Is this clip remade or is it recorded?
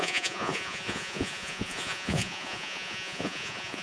remade